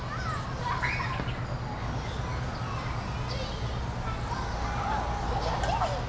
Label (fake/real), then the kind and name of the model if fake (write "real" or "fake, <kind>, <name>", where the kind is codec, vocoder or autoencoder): real